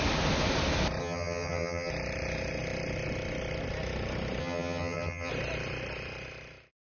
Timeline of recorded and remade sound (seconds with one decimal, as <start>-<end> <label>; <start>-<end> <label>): 0.0-1.0 recorded; 1.0-1.9 remade; 1.9-4.4 recorded; 4.4-5.3 remade; 5.3-6.9 recorded